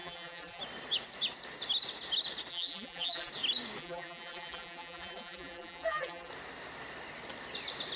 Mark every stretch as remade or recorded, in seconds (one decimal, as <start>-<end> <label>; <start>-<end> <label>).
0.0-0.6 remade; 0.6-2.5 recorded; 2.5-3.3 remade; 3.3-3.8 recorded; 3.8-6.3 remade; 6.3-8.0 recorded